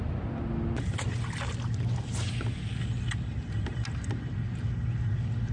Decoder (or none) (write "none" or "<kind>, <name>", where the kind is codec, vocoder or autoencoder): none